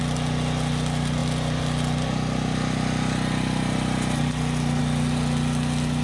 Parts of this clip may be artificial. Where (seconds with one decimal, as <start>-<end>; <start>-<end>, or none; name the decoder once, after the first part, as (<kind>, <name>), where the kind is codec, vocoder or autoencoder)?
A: none